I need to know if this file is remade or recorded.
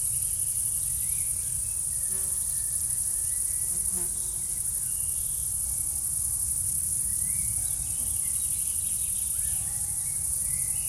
recorded